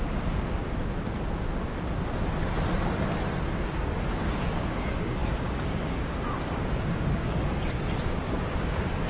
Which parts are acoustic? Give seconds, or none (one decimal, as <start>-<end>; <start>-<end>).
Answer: 0.6-3.5